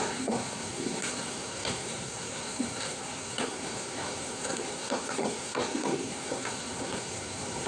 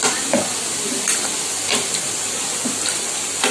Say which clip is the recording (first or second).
second